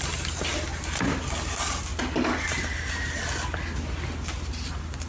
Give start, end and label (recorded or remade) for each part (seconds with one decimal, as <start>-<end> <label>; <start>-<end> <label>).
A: 0.0-5.1 recorded